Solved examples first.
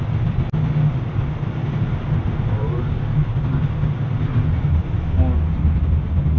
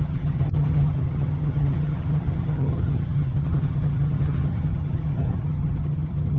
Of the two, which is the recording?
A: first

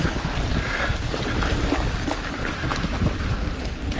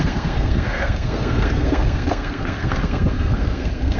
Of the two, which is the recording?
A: first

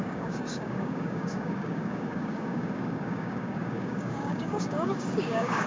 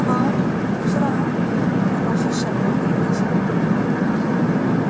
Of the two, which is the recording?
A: second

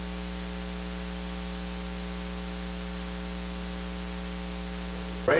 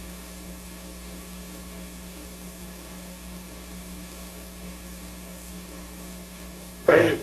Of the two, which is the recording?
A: first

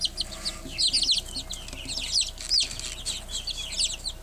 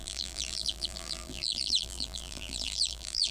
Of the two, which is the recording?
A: first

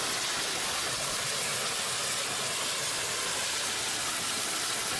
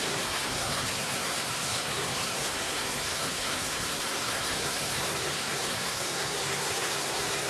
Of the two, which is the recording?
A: first